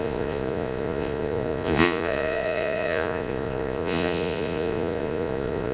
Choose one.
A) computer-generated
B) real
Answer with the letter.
A